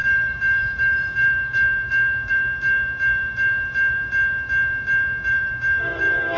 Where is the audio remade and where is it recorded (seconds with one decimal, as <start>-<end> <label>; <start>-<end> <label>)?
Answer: 0.0-6.4 remade